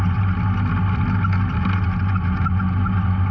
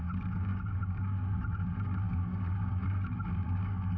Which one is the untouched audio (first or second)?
first